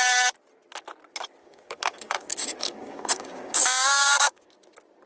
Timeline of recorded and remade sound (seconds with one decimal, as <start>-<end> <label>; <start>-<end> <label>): 0.0-1.4 recorded; 1.4-4.5 remade; 4.5-5.1 recorded